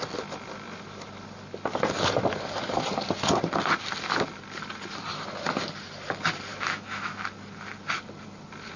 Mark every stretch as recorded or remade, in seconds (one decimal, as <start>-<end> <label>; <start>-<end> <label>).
0.0-6.5 recorded; 6.5-7.2 remade; 7.2-8.8 recorded